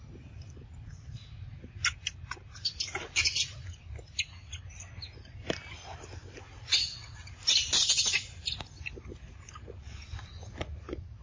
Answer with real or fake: real